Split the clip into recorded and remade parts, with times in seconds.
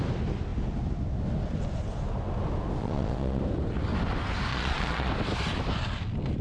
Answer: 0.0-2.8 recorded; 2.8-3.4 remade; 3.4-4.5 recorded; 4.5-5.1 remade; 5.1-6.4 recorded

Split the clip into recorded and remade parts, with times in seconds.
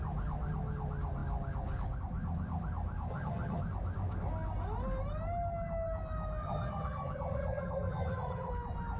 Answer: 0.0-3.1 recorded; 3.1-3.6 remade; 3.6-6.4 recorded; 6.4-8.5 remade; 8.5-9.0 recorded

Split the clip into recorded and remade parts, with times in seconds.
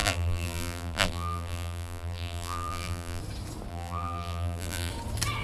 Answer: 0.0-3.2 remade; 3.2-3.7 recorded; 3.7-4.9 remade; 4.9-5.4 recorded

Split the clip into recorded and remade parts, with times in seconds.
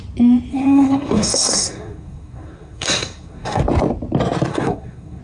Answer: 0.0-0.5 recorded; 0.5-3.6 remade; 3.6-4.5 recorded; 4.5-5.2 remade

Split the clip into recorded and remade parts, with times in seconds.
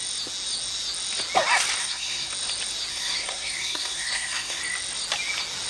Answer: 0.0-1.8 recorded; 1.8-2.3 remade; 2.3-2.9 recorded; 2.9-4.6 remade; 4.6-5.7 recorded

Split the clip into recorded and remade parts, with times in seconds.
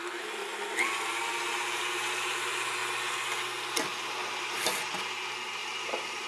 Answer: 0.0-4.2 recorded; 4.2-4.7 remade; 4.7-5.6 recorded; 5.6-6.3 remade